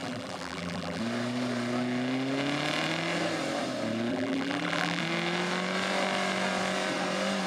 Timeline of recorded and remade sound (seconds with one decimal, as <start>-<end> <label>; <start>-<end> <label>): 0.0-1.0 remade; 1.0-4.1 recorded; 4.1-5.0 remade; 5.0-7.5 recorded